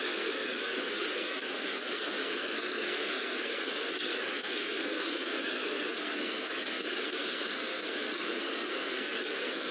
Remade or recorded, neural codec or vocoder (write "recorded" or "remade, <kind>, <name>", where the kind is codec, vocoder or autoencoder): remade, codec, SNAC